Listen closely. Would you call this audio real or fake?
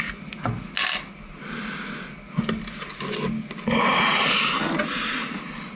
real